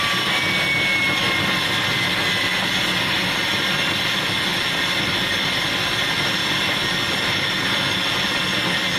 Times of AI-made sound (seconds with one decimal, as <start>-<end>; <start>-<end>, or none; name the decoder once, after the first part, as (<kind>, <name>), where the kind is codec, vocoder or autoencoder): none